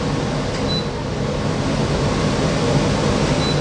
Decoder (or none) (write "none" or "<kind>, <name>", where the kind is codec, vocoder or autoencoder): none